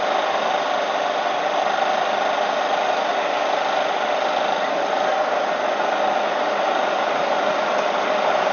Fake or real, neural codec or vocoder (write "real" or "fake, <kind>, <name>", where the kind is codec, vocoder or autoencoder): real